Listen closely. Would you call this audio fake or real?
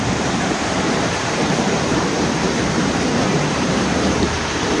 fake